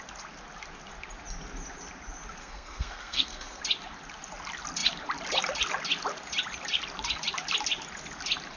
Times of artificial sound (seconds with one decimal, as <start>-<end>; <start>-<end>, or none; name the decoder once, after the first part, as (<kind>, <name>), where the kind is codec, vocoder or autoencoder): 2.4-3.6 (codec, SNAC)